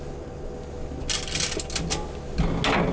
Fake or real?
real